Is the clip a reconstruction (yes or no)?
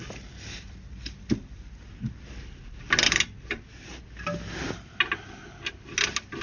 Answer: no